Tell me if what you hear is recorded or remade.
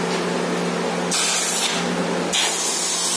recorded